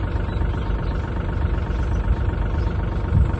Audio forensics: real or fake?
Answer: real